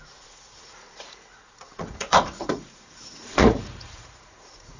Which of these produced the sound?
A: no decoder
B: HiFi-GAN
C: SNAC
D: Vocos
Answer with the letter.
D